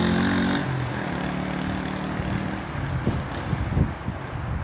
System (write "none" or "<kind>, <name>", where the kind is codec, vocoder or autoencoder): none